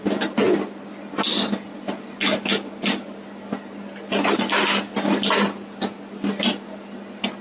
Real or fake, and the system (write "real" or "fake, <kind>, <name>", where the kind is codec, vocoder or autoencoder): real